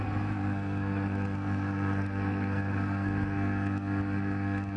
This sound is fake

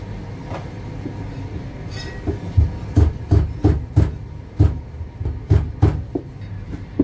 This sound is real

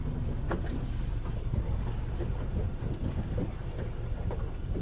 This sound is real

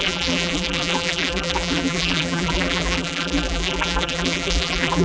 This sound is fake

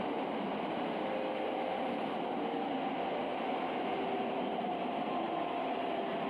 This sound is real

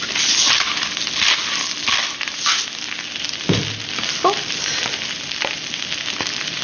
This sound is real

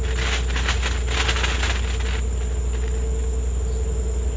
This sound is real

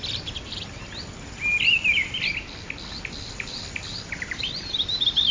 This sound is fake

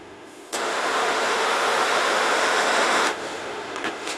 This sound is fake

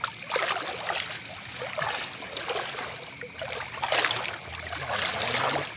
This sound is real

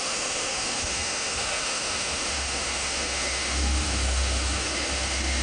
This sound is fake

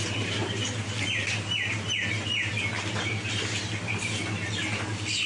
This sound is real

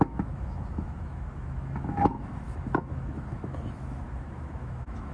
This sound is fake